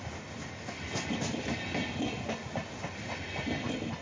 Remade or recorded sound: recorded